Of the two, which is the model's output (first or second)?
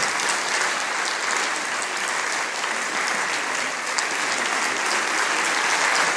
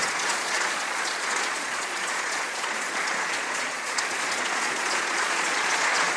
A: second